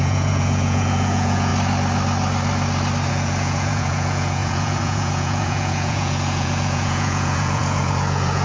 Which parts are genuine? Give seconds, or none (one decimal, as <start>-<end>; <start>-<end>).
1.5-3.1